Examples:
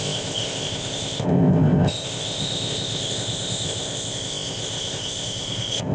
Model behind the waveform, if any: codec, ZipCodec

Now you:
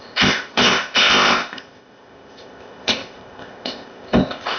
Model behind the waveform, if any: codec, ZipCodec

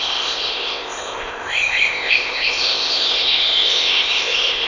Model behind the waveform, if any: codec, ZipCodec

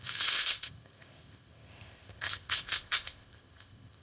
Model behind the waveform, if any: codec, ZipCodec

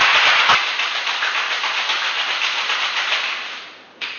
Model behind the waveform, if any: none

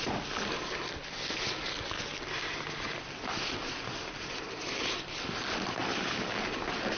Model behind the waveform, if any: none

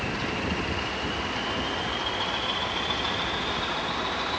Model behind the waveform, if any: none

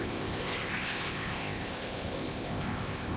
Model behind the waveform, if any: codec, ZipCodec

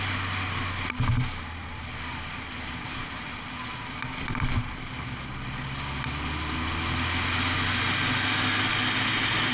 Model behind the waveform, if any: none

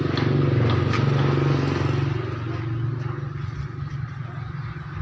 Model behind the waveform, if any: none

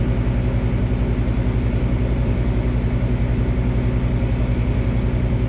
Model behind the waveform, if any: none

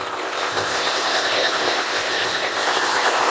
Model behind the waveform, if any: codec, ZipCodec